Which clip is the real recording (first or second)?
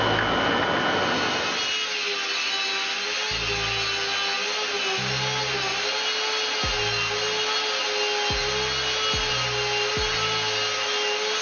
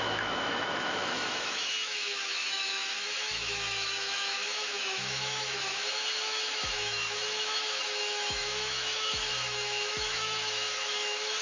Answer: first